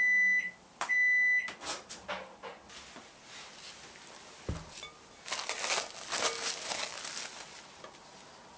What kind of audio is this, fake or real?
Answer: real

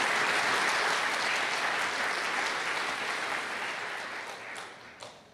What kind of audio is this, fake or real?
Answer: real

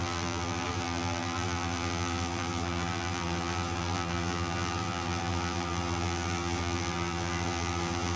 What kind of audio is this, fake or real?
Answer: fake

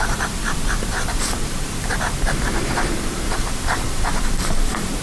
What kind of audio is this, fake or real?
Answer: fake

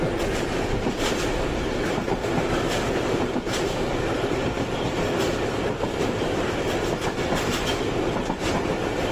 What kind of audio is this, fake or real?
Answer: real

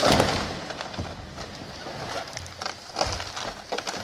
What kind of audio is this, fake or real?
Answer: real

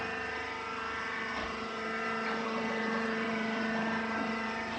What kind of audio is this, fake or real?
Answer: fake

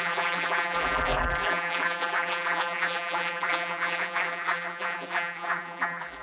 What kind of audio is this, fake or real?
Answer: fake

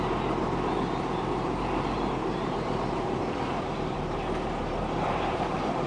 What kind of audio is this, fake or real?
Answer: fake